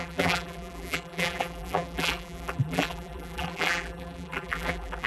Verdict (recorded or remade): remade